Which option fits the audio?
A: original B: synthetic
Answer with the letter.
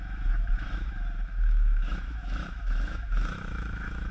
B